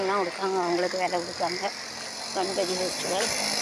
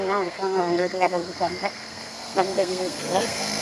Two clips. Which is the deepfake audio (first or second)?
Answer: second